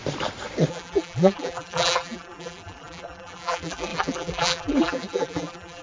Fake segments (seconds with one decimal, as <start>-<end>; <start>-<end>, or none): 0.7-5.8